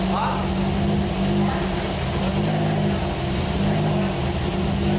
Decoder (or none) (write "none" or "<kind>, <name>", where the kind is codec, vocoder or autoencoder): none